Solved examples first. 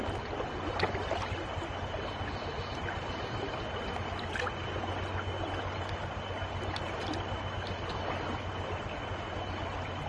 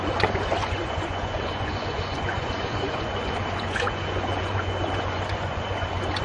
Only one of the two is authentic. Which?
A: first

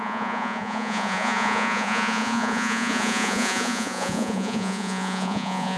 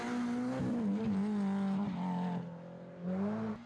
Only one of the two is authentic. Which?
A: second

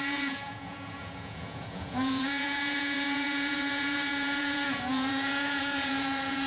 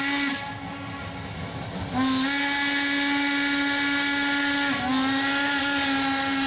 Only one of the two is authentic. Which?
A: second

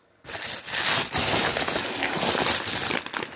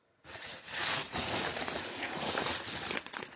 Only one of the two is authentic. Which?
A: first